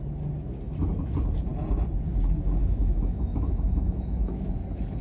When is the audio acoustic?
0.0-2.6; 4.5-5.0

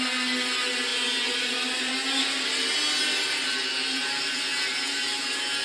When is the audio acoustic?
0.0-5.6

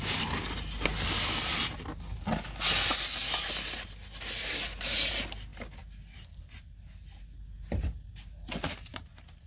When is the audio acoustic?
0.0-9.5

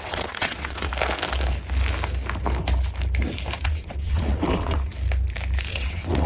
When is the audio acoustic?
0.9-3.6; 4.9-5.7

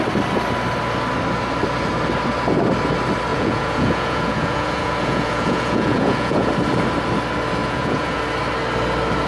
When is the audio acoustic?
0.0-3.3; 6.5-7.6; 8.2-9.3

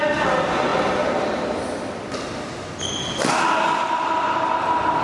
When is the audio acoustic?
0.0-5.0